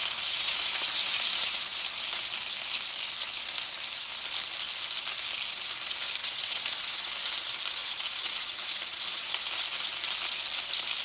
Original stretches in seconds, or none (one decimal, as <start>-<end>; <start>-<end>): 0.0-6.2; 7.1-7.8; 9.4-11.0